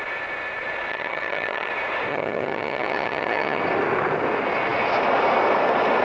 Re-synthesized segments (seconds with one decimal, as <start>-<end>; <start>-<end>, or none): 0.9-1.7; 2.1-3.6